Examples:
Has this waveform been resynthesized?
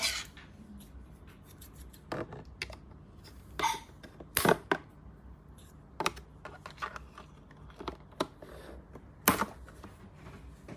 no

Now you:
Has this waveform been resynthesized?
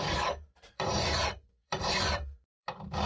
yes